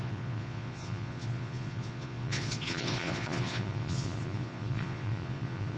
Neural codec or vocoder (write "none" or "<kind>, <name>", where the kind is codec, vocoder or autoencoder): vocoder, Vocos